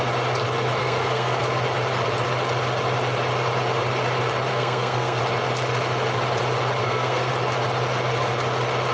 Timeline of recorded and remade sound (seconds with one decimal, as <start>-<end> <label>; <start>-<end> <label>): 0.0-0.8 recorded; 0.8-1.4 remade; 1.4-4.5 recorded; 4.5-5.2 remade; 5.2-6.8 recorded; 6.8-7.3 remade; 7.3-8.9 recorded